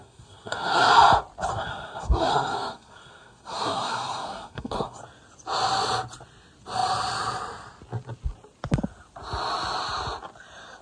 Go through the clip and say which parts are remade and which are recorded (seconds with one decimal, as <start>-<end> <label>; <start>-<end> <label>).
0.0-0.9 remade; 0.9-1.5 recorded; 1.5-5.0 remade; 5.0-10.8 recorded